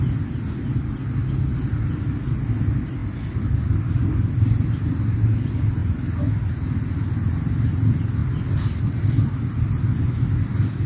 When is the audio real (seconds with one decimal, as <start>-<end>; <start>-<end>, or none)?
0.0-10.9